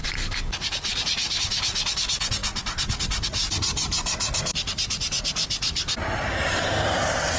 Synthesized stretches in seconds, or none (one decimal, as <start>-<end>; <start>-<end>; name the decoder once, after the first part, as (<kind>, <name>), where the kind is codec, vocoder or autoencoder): 0.0-1.4 (vocoder, BigVGAN v2)